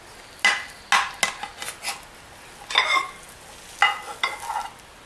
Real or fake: real